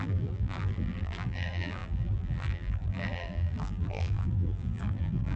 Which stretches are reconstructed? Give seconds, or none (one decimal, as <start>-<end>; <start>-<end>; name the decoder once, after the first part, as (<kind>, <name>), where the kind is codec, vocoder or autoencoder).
0.0-5.4 (vocoder, BigVGAN v2)